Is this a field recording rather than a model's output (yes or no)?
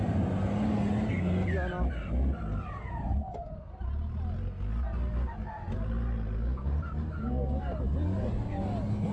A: yes